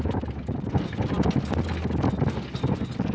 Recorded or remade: recorded